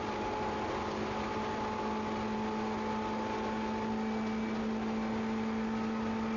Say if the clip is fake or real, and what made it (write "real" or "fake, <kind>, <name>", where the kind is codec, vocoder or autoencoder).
real